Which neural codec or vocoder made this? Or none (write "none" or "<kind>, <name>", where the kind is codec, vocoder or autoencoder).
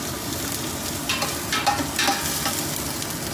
none